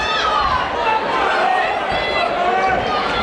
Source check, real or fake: real